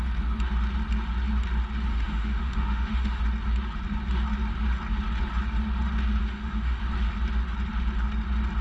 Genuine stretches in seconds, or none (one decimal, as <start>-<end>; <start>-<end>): 0.0-1.9; 3.2-6.2; 6.8-8.6